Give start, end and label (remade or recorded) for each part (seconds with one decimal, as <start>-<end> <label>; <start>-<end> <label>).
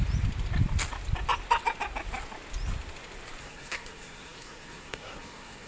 0.0-3.4 recorded; 3.4-5.7 remade